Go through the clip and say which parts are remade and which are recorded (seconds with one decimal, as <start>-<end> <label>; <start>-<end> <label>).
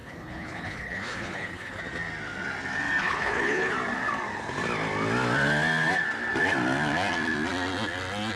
0.0-1.8 remade; 1.8-3.0 recorded; 3.0-3.7 remade; 3.7-8.4 recorded